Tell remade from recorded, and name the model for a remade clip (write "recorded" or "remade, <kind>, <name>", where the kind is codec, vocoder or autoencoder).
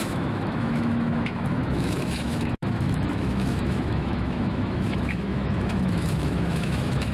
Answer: remade, autoencoder, DAC-VAE